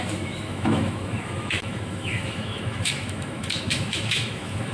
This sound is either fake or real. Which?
fake